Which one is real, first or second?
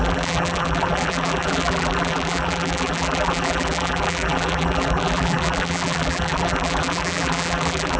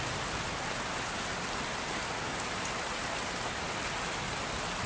second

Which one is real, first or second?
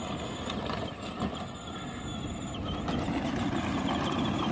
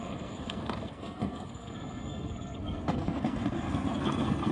first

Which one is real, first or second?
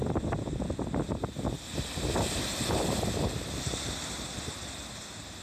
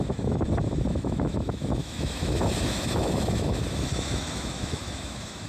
first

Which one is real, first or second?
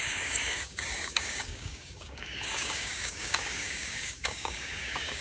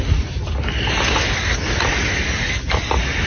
second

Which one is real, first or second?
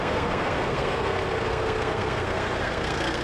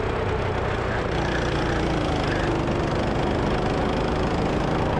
second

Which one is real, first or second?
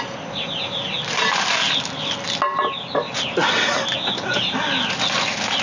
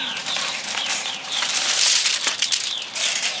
first